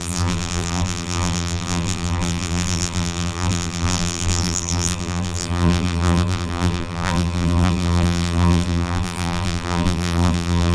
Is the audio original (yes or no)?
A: no